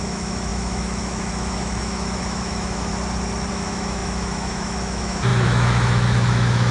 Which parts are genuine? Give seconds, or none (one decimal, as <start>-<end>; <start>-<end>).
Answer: 2.9-3.5